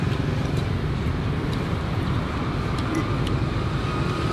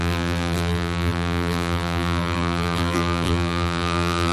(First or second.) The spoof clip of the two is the second